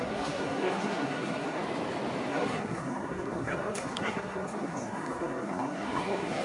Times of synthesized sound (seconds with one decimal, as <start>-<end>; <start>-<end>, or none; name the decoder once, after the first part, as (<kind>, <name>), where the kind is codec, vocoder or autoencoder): 0.0-1.6 (codec, SNAC); 2.3-6.4